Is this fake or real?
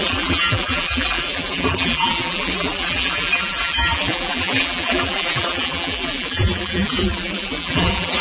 fake